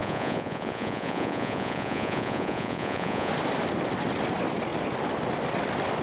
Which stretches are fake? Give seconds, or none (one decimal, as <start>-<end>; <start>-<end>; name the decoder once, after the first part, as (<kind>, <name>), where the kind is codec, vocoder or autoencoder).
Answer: 0.0-3.3 (vocoder, Vocos)